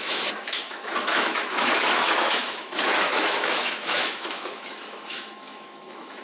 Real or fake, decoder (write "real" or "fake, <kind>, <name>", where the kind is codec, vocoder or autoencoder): fake, autoencoder, DAC-VAE